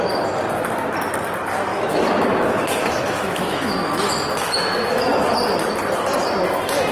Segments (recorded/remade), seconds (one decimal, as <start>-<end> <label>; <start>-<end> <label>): 0.0-1.7 recorded; 1.7-4.1 remade; 4.1-6.9 recorded